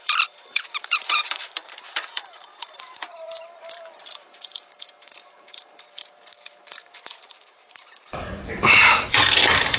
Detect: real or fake fake